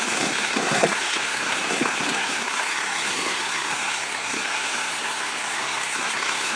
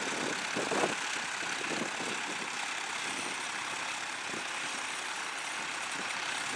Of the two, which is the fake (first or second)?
first